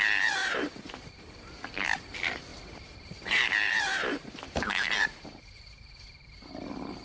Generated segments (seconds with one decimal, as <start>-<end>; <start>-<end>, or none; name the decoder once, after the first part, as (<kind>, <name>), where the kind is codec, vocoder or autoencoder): 0.4-1.2 (vocoder, BigVGAN v2); 2.5-5.6